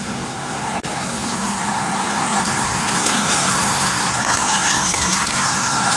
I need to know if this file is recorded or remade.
remade